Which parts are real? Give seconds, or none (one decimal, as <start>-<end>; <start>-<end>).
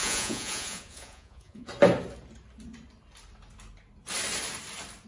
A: 1.7-5.1